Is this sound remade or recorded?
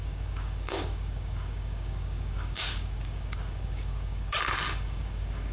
remade